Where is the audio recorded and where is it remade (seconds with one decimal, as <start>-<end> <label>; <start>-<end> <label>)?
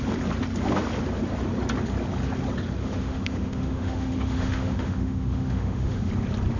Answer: 0.0-2.8 recorded; 2.8-6.1 remade; 6.1-6.6 recorded